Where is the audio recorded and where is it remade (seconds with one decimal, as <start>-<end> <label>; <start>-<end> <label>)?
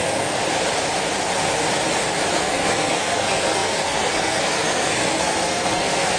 0.0-0.4 remade; 0.4-2.3 recorded; 2.3-6.2 remade